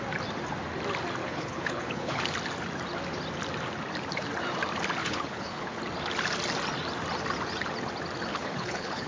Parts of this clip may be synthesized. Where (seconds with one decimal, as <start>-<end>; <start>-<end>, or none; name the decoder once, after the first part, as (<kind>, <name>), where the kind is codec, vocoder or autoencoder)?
1.2-2.2 (codec, HILCodec); 5.0-5.8; 8.3-9.1